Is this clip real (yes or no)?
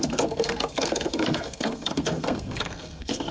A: no